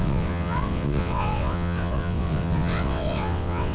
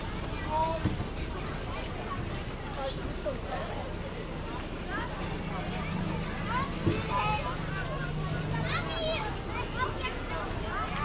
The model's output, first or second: first